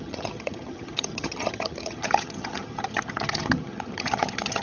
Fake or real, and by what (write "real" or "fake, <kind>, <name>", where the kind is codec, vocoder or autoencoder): fake, vocoder, HiFi-GAN